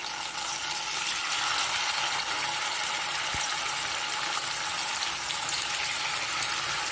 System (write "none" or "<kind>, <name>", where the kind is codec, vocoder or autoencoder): none